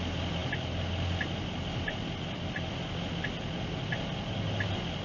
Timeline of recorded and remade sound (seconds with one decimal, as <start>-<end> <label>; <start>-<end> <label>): 0.0-5.0 recorded